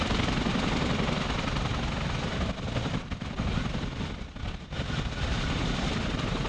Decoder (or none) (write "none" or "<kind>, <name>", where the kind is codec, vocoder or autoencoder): none